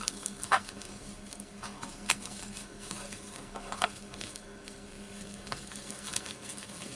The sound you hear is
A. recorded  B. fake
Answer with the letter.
B